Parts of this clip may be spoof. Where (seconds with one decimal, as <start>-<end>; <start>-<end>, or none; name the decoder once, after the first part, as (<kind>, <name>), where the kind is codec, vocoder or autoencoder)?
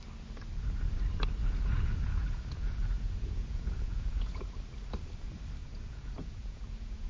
1.4-4.4 (vocoder, Vocos); 5.6-7.1